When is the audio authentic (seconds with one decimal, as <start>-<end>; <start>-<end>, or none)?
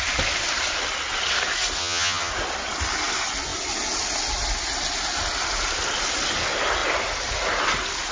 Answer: 0.0-1.8; 2.3-8.1